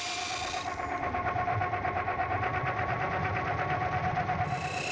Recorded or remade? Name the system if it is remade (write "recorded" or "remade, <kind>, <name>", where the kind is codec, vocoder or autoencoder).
recorded